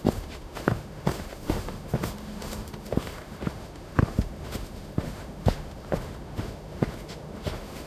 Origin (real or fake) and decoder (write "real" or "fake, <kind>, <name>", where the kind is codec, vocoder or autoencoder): fake, autoencoder, DAC-VAE